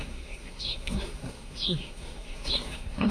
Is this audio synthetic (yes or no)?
yes